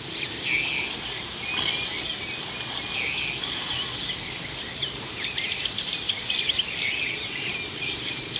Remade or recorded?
recorded